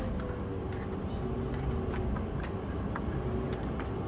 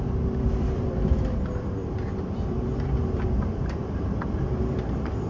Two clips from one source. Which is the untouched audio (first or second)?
first